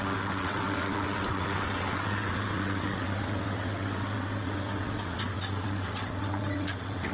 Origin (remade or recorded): remade